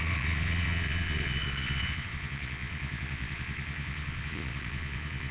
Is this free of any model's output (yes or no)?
no